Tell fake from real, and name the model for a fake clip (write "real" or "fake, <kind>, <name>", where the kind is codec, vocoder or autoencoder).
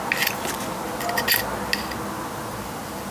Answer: real